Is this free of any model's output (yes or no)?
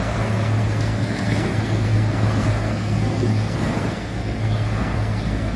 no